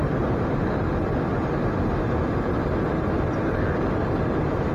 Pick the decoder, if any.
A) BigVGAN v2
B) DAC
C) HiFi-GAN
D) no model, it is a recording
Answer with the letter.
D